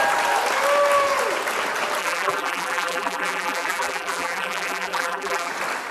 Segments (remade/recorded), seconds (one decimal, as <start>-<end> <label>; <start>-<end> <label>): 0.0-2.0 recorded; 2.0-5.5 remade; 5.5-5.9 recorded